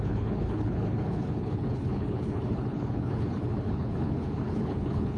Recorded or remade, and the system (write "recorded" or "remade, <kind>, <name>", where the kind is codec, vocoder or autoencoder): remade, codec, HILCodec